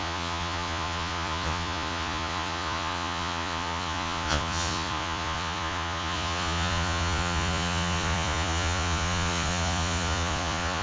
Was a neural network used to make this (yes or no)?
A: yes